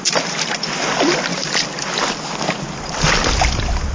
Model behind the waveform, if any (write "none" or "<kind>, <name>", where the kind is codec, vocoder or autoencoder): none